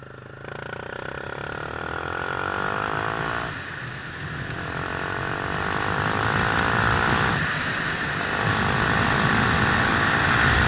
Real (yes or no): yes